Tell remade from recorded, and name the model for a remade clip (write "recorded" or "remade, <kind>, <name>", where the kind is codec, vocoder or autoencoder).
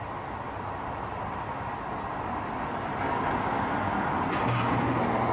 recorded